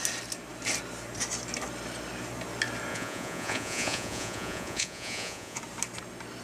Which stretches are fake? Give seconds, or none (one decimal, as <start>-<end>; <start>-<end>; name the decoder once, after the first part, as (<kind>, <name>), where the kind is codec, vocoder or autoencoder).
2.9-5.6 (vocoder, Vocos)